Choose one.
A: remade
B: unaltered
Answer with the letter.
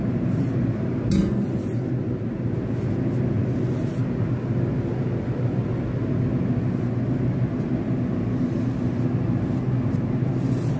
B